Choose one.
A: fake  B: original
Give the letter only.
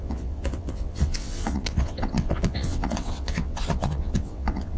A